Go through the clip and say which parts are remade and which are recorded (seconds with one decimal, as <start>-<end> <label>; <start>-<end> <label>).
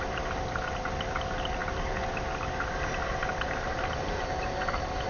0.0-5.1 recorded